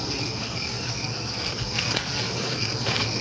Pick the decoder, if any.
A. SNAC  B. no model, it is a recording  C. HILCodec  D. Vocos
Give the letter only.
A